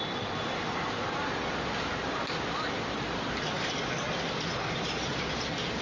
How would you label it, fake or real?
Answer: real